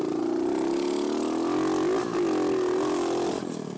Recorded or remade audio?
recorded